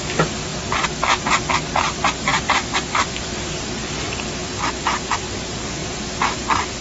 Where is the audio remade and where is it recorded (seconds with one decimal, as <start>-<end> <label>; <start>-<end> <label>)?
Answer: 0.0-2.3 recorded; 2.3-3.7 remade; 3.7-5.8 recorded; 5.8-6.8 remade